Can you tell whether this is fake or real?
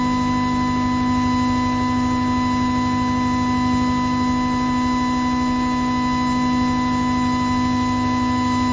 real